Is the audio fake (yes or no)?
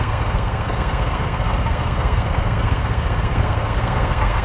yes